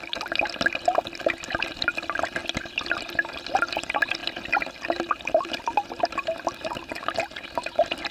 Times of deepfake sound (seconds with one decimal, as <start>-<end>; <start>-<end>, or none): none